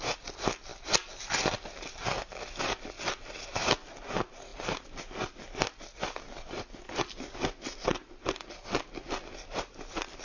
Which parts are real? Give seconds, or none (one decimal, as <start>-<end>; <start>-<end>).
0.0-10.2